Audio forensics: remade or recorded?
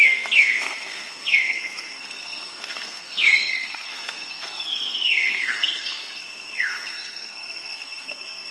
remade